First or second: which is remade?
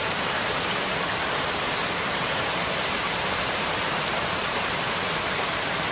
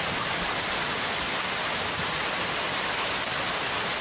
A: first